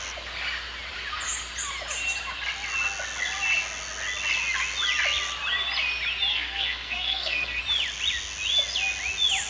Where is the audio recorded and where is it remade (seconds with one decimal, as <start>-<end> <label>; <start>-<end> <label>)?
0.0-6.3 recorded; 6.3-7.6 remade; 7.6-9.5 recorded